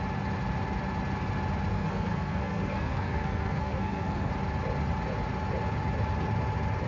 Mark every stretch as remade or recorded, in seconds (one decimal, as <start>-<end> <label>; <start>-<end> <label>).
0.0-1.7 recorded; 1.7-4.3 remade; 4.3-6.9 recorded

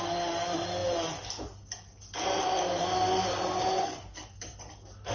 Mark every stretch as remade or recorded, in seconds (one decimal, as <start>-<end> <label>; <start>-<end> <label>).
0.0-3.8 recorded; 3.8-4.4 remade; 4.4-5.1 recorded

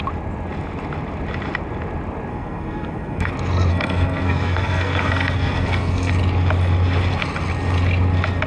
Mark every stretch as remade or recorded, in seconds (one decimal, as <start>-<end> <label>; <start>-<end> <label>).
0.0-2.3 recorded; 2.3-3.3 remade; 3.3-3.7 recorded; 3.7-6.1 remade; 6.1-8.5 recorded

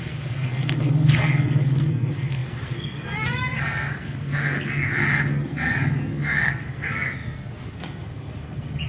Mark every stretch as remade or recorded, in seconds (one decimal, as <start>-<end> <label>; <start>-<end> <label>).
0.0-8.9 remade